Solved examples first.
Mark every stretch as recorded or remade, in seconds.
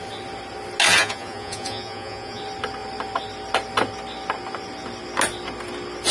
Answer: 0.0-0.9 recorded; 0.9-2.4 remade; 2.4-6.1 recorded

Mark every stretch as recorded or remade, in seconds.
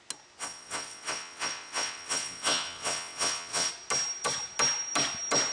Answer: 0.0-0.4 recorded; 0.4-3.7 remade; 3.7-5.5 recorded